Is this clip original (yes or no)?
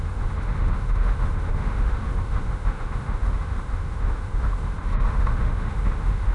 no